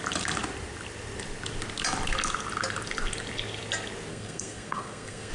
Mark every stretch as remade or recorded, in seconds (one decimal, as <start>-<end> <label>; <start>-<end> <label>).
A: 0.0-4.1 recorded; 4.1-5.3 remade